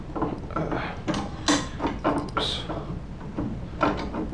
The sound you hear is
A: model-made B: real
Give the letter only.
B